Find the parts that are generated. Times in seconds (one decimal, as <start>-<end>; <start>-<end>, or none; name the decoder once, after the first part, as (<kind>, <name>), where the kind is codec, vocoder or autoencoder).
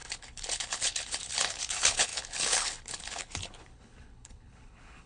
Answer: 0.0-5.1 (codec, HILCodec)